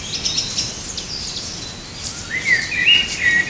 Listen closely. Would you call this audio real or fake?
real